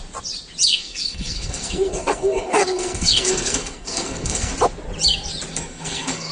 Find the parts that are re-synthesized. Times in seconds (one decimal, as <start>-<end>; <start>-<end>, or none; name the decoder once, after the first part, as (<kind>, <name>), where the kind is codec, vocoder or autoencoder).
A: 0.7-4.5 (codec, SNAC); 5.5-6.3